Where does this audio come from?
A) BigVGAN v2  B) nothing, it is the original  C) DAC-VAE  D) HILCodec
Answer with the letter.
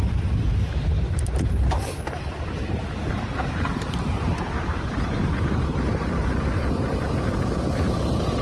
A